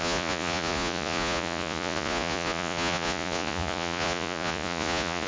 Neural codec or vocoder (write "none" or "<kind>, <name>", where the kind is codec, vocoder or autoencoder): vocoder, Vocos